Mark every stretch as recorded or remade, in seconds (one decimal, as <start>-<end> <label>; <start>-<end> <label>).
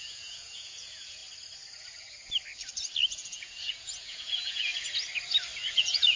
0.0-1.2 remade; 1.2-3.1 recorded; 3.1-4.7 remade; 4.7-5.7 recorded; 5.7-6.2 remade